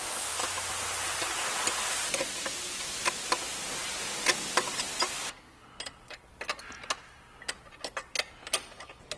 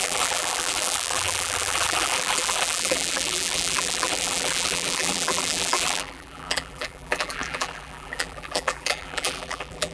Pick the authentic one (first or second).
first